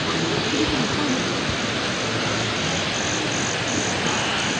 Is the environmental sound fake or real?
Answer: real